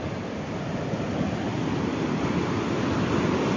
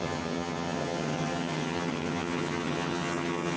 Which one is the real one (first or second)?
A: first